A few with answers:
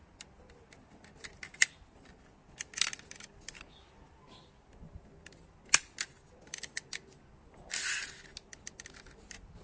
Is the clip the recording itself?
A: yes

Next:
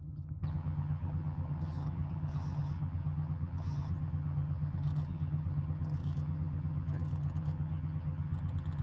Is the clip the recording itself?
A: no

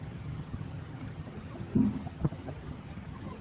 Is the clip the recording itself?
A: no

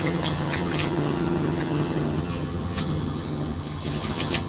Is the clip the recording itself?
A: no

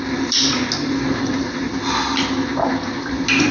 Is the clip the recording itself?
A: yes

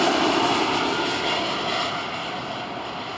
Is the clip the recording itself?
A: yes